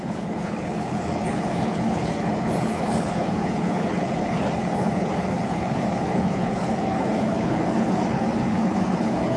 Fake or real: fake